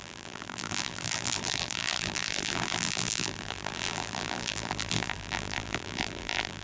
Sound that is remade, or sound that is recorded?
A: remade